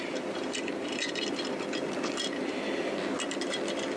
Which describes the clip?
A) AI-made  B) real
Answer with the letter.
A